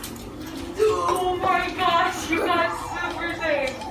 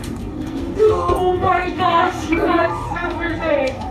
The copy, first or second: second